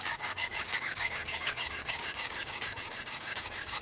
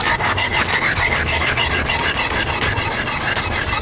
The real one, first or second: second